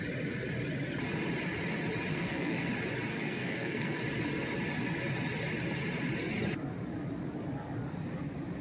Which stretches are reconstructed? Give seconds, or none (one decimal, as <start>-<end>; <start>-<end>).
2.1-2.7; 3.1-4.0

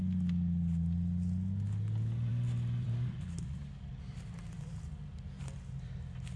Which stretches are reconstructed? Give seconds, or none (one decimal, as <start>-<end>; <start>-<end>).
none

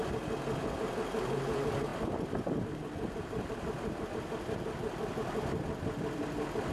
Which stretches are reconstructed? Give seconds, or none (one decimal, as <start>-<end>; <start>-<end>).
none

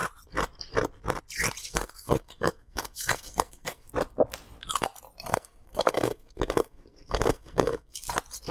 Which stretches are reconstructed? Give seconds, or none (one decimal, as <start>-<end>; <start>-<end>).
1.6-3.9; 5.3-8.1

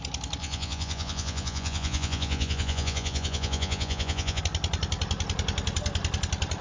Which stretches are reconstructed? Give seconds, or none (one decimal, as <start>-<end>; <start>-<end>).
0.4-4.4

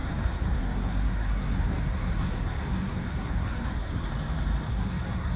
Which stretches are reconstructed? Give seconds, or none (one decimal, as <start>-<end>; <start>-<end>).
0.0-4.1; 4.7-5.4